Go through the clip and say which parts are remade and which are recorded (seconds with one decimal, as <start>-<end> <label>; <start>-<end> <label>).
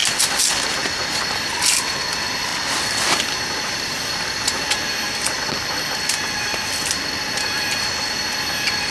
0.0-8.9 recorded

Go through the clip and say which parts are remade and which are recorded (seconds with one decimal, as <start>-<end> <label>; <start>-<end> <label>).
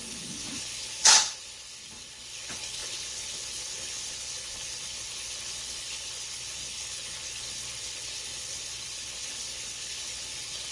0.0-10.7 remade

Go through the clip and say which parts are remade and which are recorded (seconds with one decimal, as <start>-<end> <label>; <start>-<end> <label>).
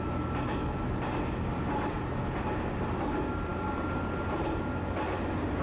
0.0-5.6 recorded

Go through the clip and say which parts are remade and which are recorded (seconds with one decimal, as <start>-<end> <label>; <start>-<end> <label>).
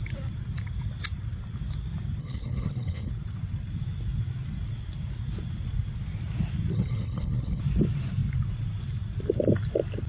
0.0-2.2 recorded; 2.2-3.1 remade; 3.1-6.7 recorded; 6.7-7.6 remade; 7.6-10.1 recorded